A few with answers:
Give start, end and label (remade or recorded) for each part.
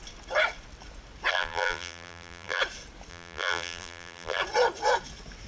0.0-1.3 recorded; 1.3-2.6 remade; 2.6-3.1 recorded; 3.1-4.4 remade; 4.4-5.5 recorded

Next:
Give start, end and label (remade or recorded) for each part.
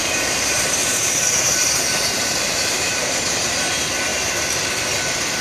0.0-3.2 remade; 3.2-4.1 recorded; 4.1-4.7 remade; 4.7-5.4 recorded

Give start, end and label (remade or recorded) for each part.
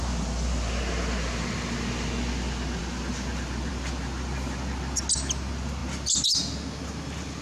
0.0-7.4 recorded